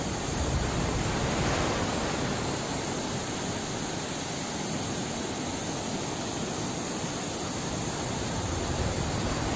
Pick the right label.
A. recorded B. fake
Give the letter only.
A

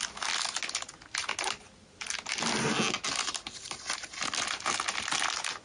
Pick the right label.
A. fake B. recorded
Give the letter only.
B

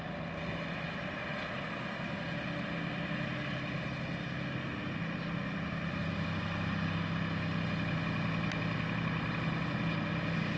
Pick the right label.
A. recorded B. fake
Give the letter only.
A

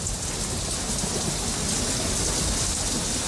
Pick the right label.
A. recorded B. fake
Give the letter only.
A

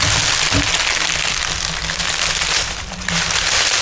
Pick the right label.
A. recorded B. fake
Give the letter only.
A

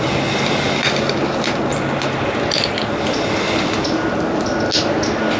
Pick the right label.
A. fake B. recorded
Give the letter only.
B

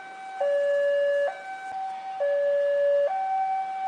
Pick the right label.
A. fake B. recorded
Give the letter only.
B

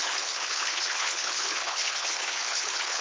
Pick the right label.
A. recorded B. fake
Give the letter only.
B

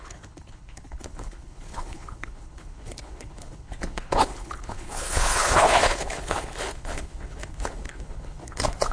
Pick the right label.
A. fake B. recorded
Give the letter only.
A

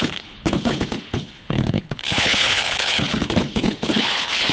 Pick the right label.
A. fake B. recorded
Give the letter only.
A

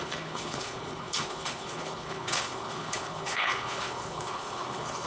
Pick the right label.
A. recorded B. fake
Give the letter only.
B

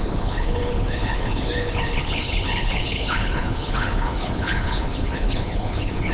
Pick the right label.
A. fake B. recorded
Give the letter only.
A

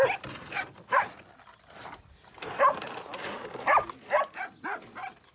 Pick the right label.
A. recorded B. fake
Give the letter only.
A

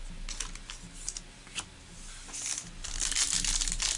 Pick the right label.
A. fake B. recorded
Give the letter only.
B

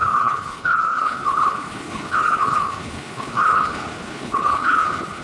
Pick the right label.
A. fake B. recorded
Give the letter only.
A